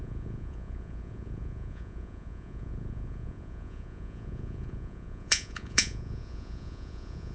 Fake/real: fake